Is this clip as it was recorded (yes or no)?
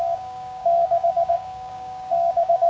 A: no